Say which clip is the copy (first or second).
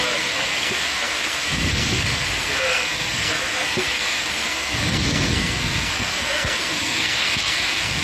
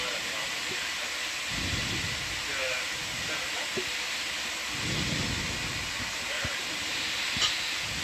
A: first